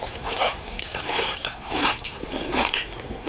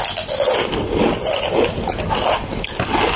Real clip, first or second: second